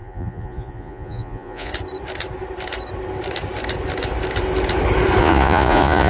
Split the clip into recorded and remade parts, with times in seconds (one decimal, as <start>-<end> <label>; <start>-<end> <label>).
0.0-1.7 remade; 1.7-5.2 recorded; 5.2-6.1 remade